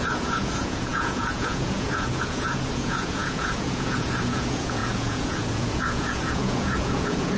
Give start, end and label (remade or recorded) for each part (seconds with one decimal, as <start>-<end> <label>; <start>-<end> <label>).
0.0-7.4 remade